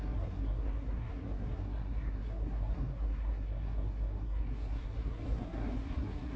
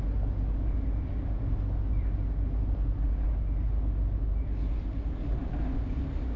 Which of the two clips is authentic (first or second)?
second